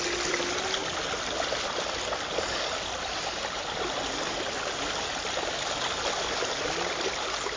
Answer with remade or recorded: recorded